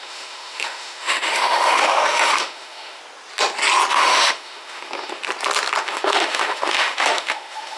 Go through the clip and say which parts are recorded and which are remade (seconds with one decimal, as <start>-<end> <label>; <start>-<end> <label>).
0.0-3.0 remade; 3.0-3.9 recorded; 3.9-5.2 remade; 5.2-5.8 recorded; 5.8-7.8 remade